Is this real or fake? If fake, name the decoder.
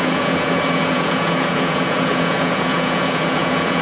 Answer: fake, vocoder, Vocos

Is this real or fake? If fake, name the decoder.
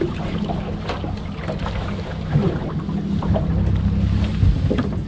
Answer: real